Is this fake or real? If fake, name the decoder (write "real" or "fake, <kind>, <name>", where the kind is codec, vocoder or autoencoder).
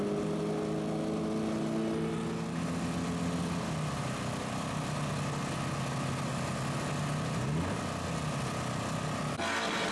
real